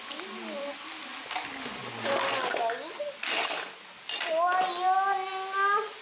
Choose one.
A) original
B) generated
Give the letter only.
A